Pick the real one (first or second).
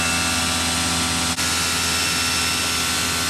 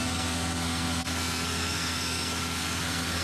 first